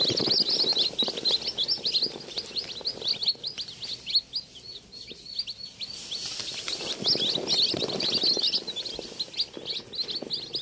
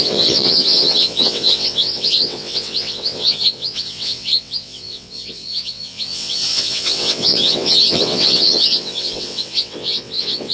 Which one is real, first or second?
first